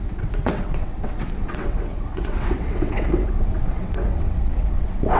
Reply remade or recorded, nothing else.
remade